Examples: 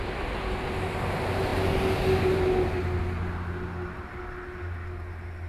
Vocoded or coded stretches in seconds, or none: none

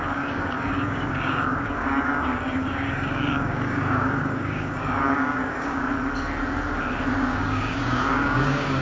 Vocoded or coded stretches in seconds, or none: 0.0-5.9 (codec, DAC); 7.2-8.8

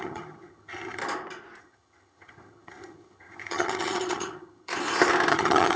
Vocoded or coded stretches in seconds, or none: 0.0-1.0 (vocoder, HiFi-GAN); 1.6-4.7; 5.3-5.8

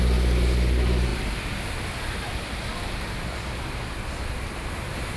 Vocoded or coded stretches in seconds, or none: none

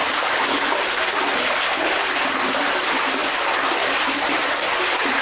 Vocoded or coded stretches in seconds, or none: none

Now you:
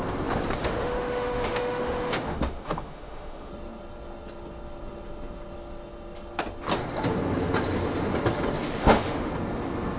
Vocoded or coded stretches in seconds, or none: 0.6-3.5 (autoencoder, DAC-VAE); 8.8-9.3